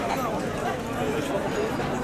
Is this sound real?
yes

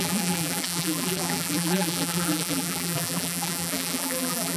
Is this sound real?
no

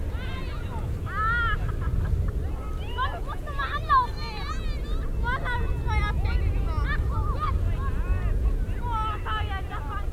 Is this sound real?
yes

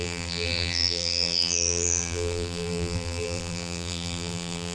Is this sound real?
no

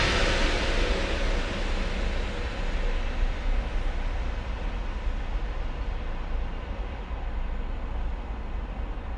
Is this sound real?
yes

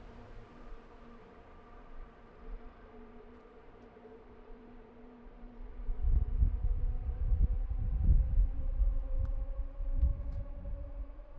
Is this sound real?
no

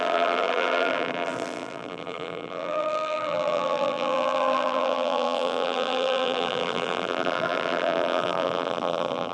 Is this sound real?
no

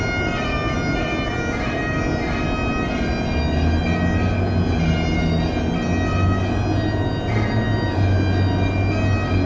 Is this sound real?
yes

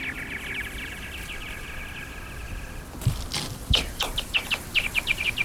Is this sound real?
yes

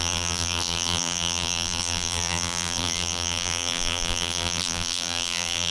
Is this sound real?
no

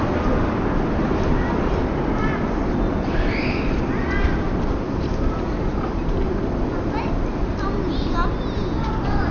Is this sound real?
yes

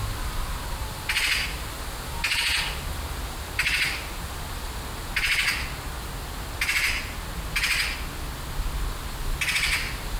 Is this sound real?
yes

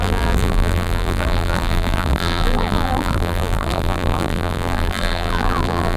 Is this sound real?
no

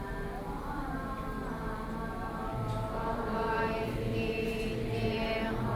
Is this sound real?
yes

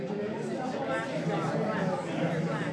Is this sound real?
yes